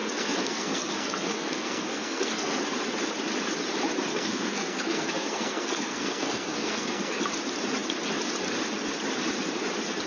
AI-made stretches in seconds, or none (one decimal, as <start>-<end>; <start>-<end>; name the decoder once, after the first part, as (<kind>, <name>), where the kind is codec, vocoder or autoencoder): 0.0-2.6 (codec, SNAC); 4.1-7.2